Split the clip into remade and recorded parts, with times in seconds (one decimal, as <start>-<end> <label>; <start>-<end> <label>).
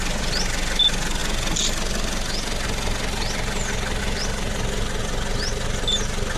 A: 0.0-6.4 recorded